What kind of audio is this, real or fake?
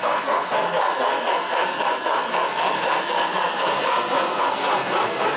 fake